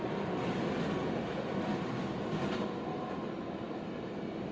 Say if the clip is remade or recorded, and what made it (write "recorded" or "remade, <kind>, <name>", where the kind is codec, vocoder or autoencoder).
recorded